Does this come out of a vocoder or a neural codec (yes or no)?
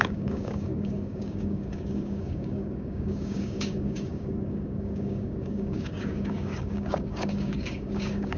yes